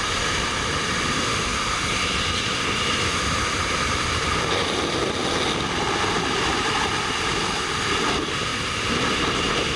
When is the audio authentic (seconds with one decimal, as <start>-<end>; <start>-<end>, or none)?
1.5-3.0; 5.2-6.4; 8.5-9.4